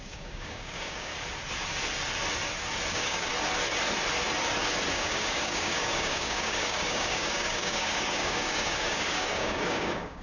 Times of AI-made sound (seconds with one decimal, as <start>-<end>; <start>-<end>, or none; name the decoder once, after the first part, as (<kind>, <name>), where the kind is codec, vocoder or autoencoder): 0.0-1.1 (codec, DAC); 2.9-3.3; 4.9-10.2